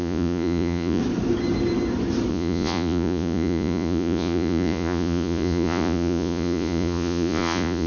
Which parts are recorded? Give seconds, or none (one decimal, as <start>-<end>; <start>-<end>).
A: 1.0-2.3